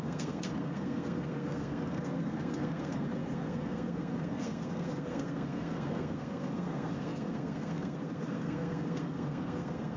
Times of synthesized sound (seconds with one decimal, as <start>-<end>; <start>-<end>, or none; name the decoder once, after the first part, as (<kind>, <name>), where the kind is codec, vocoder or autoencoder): 0.0-10.0 (codec, SNAC)